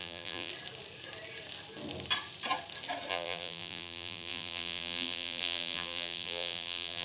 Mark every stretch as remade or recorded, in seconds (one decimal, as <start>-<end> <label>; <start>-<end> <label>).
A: 0.0-0.5 remade; 0.5-3.1 recorded; 3.1-7.0 remade